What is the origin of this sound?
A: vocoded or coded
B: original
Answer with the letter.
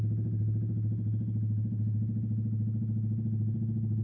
B